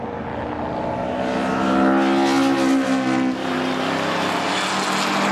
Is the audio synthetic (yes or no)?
no